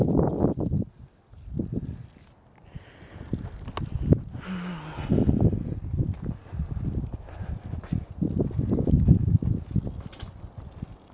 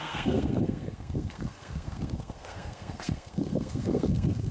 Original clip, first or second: first